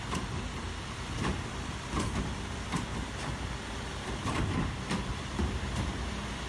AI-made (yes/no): yes